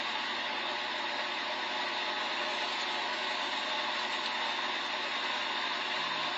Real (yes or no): yes